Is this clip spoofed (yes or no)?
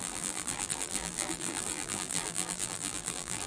yes